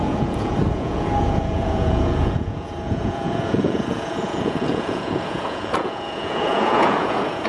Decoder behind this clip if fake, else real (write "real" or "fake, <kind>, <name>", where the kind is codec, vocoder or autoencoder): fake, vocoder, Vocos